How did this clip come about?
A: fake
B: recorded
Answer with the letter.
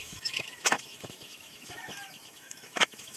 A